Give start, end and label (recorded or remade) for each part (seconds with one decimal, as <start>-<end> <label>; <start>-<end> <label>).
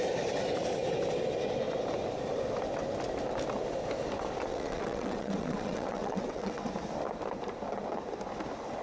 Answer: 0.0-4.5 recorded; 4.5-6.7 remade; 6.7-8.8 recorded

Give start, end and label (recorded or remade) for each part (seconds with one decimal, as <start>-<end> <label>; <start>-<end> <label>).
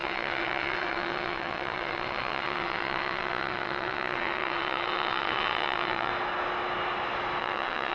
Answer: 0.0-6.1 remade; 6.1-7.4 recorded; 7.4-7.9 remade